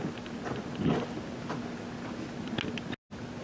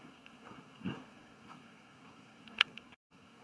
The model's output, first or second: second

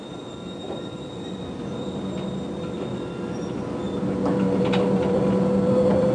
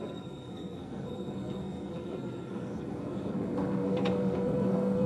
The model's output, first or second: second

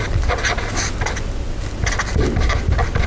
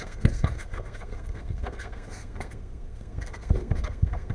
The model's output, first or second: second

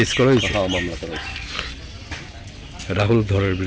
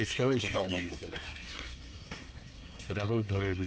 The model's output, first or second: second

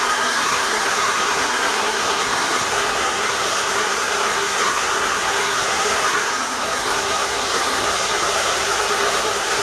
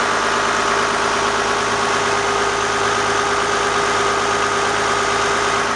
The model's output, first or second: first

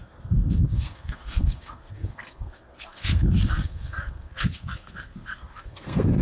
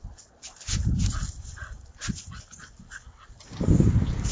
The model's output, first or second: first